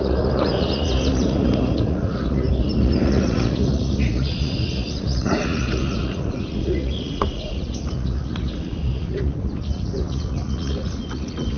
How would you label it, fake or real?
fake